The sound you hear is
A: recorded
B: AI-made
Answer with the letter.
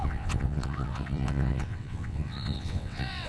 B